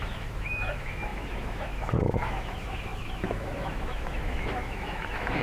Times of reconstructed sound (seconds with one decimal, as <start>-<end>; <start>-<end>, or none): 0.0-5.4